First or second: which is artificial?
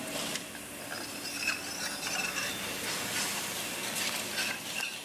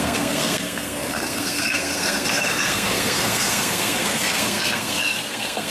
second